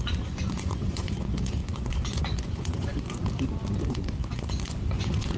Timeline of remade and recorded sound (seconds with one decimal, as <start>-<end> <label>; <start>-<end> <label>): 0.0-3.2 remade; 3.2-3.9 recorded; 3.9-5.4 remade